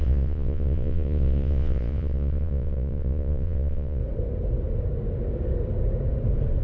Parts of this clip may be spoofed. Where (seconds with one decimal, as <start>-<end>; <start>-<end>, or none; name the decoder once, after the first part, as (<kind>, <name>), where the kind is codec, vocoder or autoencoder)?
0.0-4.0 (vocoder, Vocos)